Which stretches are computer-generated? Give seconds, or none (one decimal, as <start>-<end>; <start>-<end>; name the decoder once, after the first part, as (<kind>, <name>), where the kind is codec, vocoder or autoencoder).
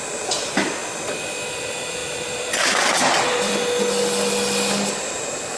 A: 0.0-0.8 (vocoder, BigVGAN v2); 1.5-3.5; 4.9-5.6